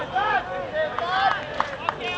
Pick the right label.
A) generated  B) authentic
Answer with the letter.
B